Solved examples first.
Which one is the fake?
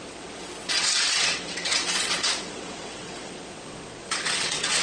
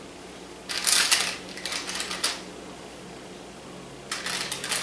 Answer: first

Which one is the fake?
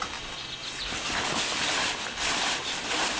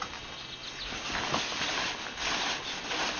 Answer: first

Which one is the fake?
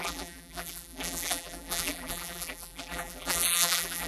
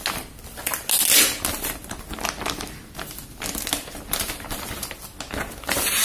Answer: first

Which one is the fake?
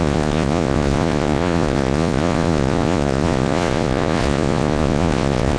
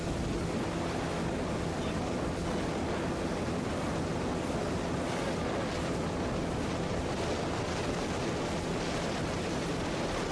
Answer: first